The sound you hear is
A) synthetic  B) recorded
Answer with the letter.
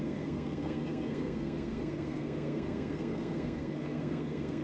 A